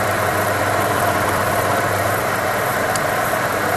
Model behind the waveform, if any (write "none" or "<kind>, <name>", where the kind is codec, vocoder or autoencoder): vocoder, BigVGAN v2